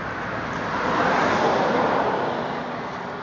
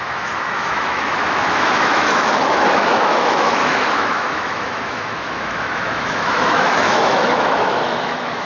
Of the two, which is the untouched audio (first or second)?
first